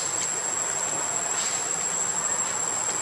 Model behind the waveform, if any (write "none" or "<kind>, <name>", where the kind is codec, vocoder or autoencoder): none